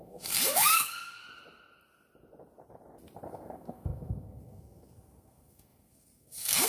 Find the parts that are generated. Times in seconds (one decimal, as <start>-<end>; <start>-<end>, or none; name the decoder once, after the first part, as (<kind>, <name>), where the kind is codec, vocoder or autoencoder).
0.0-1.2 (codec, SNAC); 3.3-6.7